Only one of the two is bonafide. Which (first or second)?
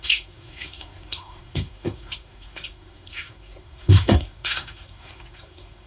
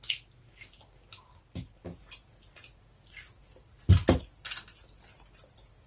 second